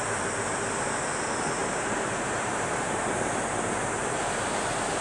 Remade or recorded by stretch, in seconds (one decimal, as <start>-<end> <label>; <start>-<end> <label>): 0.0-1.6 recorded; 1.6-3.1 remade; 3.1-4.0 recorded; 4.0-5.0 remade

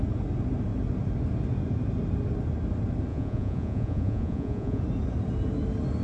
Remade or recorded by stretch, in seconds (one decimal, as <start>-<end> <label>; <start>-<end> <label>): 0.0-3.1 recorded; 3.1-4.8 remade; 4.8-6.0 recorded

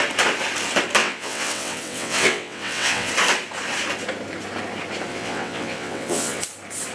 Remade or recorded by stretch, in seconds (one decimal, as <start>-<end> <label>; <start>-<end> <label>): 0.0-1.0 recorded; 1.0-3.1 remade; 3.1-5.1 recorded; 5.1-6.4 remade; 6.4-6.9 recorded

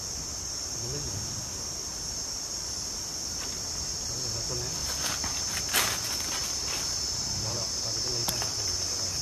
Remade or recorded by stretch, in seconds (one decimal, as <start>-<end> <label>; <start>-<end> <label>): 0.0-9.2 recorded

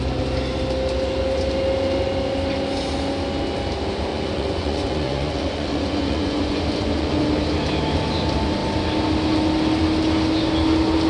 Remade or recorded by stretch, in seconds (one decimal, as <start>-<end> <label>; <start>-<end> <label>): 0.0-4.1 recorded; 4.1-7.2 remade; 7.2-11.1 recorded

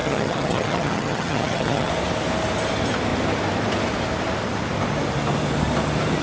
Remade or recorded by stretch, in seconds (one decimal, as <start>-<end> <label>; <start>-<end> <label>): 0.0-1.9 remade; 1.9-6.2 recorded